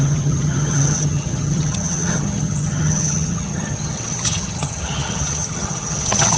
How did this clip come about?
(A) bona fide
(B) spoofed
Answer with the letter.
B